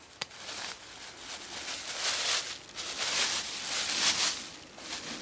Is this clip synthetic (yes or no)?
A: no